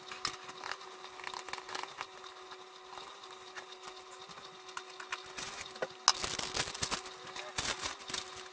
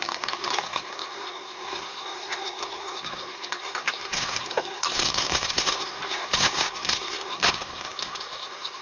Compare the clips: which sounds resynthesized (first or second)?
second